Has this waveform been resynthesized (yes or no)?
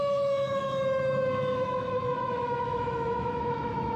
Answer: yes